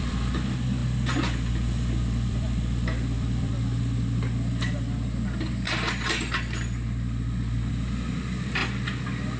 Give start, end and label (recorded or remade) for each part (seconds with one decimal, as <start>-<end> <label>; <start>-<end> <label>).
0.0-3.5 remade; 3.5-7.7 recorded; 7.7-8.6 remade; 8.6-9.4 recorded